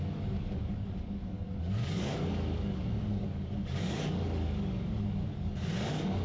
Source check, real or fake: fake